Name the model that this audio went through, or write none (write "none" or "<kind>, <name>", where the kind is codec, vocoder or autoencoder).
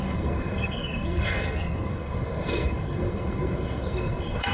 codec, SNAC